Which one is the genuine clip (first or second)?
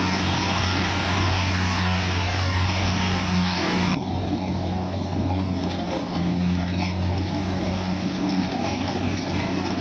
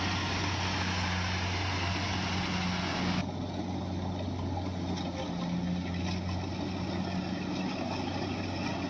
second